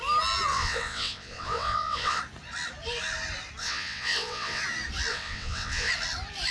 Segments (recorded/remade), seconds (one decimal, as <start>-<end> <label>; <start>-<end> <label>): 0.0-0.5 recorded; 0.5-2.2 remade; 2.2-3.6 recorded; 3.6-4.6 remade; 4.6-5.1 recorded; 5.1-5.9 remade; 5.9-6.5 recorded